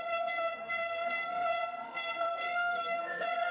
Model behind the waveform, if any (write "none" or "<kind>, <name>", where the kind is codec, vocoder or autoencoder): codec, SNAC